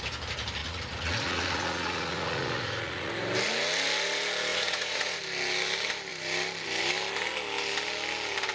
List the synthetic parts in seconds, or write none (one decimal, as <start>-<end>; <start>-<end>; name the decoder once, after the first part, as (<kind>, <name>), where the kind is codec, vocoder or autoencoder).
0.6-3.1 (vocoder, Vocos); 4.5-5.2